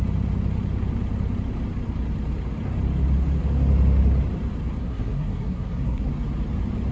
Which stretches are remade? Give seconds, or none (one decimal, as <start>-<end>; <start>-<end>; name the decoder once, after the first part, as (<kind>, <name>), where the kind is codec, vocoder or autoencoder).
4.8-6.1 (codec, SNAC)